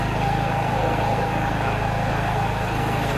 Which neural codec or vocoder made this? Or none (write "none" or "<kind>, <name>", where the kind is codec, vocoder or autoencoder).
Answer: codec, SNAC